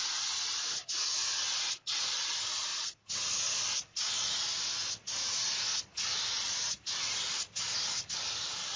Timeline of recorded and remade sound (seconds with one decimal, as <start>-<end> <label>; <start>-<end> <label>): 0.0-8.8 recorded